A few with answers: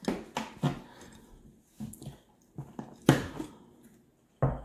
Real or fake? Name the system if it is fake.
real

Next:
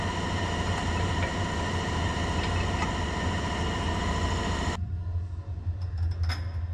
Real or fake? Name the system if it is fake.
real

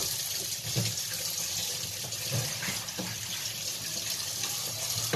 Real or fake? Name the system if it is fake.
real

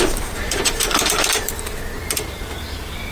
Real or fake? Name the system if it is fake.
fake, vocoder, BigVGAN v2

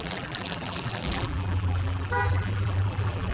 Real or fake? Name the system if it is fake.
fake, vocoder, BigVGAN v2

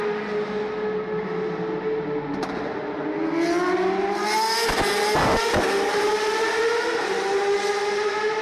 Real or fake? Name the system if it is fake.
real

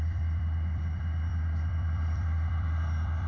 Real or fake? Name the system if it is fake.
fake, vocoder, BigVGAN v2